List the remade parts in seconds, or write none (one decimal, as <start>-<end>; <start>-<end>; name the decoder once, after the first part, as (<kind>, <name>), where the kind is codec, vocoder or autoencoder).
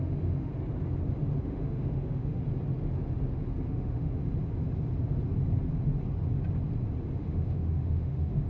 0.0-0.5 (autoencoder, DAC-VAE); 1.4-2.4; 3.7-4.2; 7.2-8.5